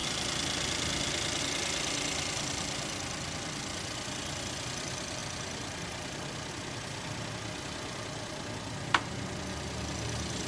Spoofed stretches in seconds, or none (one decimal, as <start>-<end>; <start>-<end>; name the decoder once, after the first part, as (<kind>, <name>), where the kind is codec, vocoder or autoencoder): none